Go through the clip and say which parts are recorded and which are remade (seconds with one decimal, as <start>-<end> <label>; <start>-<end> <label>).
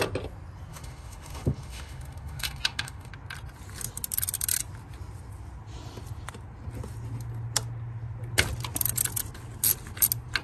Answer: 0.0-0.7 recorded; 0.7-3.1 remade; 3.1-10.4 recorded